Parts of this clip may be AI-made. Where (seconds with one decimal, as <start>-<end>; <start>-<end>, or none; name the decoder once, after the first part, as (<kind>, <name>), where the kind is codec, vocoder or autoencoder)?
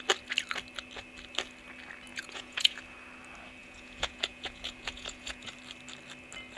2.1-2.8 (vocoder, Vocos); 3.6-5.5